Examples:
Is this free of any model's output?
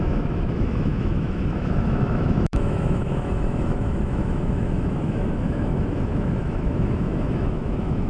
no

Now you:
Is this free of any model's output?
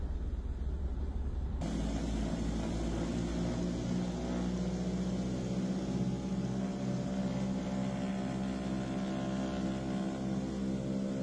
yes